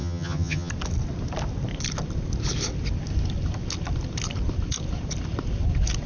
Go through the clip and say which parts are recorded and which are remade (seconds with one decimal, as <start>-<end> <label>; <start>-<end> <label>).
0.0-0.7 remade; 0.7-6.1 recorded